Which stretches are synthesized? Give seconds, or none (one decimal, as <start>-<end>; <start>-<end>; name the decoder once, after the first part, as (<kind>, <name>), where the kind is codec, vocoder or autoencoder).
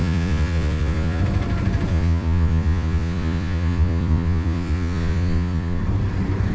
0.0-1.2 (vocoder, Vocos); 1.9-5.8